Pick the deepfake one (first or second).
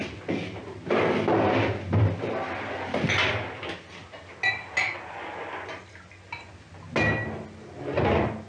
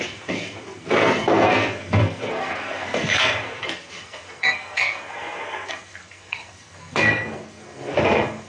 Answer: second